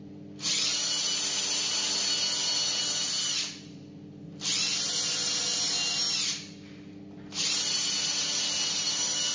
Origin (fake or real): real